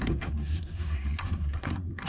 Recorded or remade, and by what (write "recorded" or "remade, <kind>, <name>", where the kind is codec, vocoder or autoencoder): remade, codec, SNAC